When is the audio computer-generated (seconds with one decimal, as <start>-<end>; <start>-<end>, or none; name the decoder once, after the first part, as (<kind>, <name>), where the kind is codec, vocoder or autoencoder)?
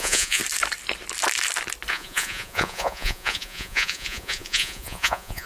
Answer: 0.0-0.4 (vocoder, Vocos); 1.9-5.5